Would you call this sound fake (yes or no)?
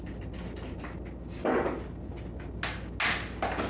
no